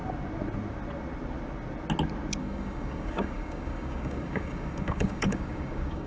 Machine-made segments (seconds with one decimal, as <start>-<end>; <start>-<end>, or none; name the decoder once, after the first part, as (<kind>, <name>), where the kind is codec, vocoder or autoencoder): 2.4-6.1 (codec, DAC)